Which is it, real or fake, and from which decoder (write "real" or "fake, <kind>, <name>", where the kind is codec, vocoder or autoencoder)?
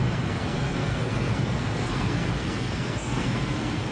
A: fake, codec, SNAC